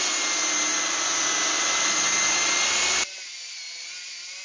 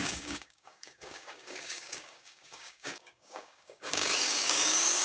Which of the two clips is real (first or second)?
first